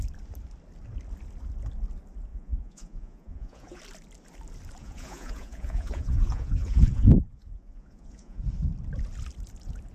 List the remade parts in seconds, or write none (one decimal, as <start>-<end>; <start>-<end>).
2.3-3.8; 4.8-8.4